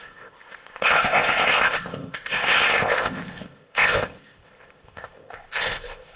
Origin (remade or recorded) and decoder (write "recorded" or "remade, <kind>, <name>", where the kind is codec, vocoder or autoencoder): remade, codec, ZipCodec